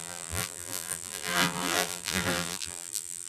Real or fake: fake